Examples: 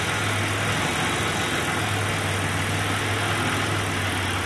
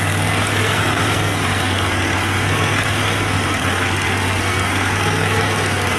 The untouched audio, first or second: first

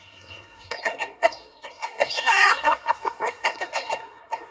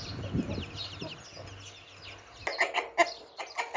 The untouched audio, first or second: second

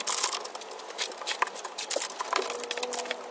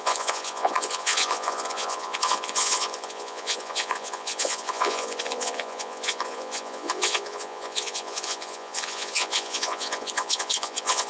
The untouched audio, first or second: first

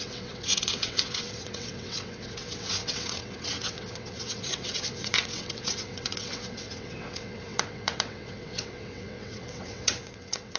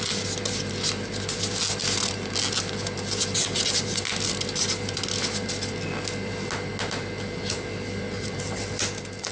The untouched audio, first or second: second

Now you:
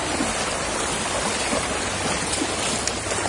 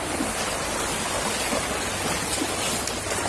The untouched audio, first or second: second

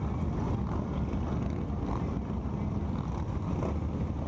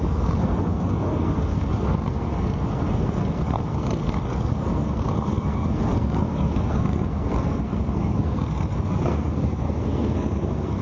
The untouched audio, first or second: first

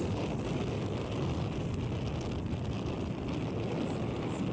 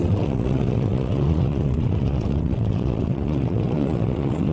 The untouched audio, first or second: first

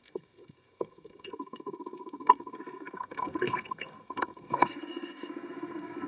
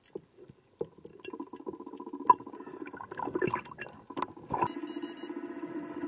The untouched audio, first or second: second